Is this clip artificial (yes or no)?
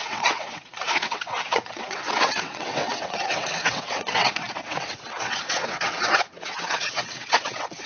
yes